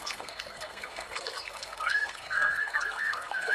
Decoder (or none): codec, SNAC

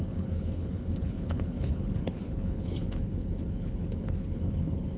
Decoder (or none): codec, HILCodec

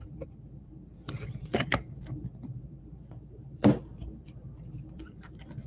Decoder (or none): vocoder, BigVGAN v2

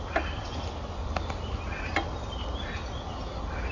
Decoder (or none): none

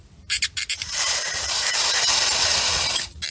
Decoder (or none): none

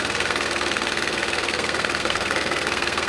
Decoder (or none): codec, SNAC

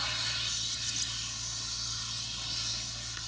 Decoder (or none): none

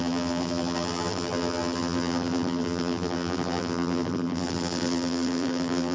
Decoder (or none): vocoder, BigVGAN v2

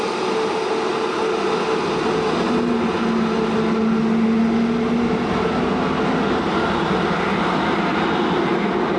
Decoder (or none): none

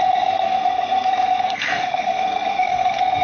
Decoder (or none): codec, SNAC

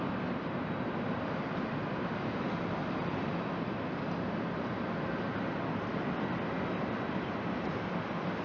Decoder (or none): none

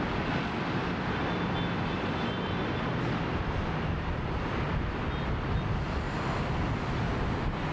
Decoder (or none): none